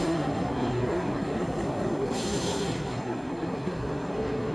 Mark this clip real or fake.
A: fake